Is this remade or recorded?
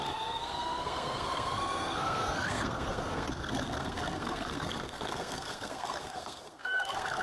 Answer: remade